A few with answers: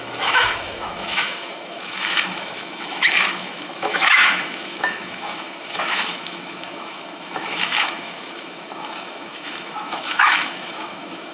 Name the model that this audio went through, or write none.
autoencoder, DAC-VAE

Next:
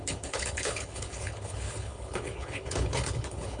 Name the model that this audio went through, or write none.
codec, HILCodec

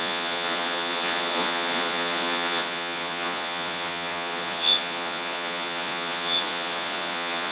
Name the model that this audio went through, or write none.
vocoder, Vocos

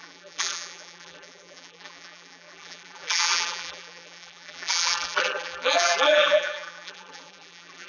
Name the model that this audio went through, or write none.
vocoder, BigVGAN v2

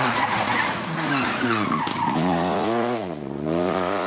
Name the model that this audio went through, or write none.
vocoder, Vocos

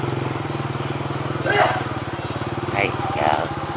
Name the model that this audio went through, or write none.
none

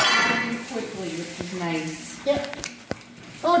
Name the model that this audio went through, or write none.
none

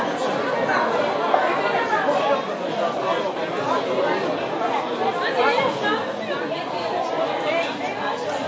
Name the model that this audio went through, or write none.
none